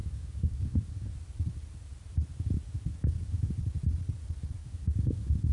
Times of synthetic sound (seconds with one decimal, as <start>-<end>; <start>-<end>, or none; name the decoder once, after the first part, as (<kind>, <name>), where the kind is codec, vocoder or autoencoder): 0.0-1.1 (codec, DAC); 2.9-3.5; 4.6-5.5